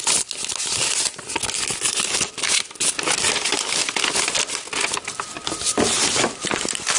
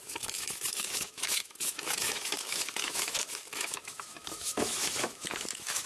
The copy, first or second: second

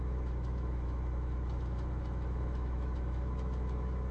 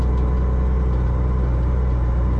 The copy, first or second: first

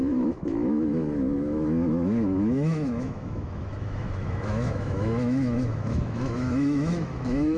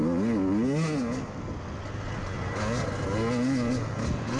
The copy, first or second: first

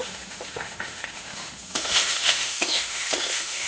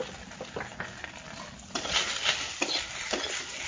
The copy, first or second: first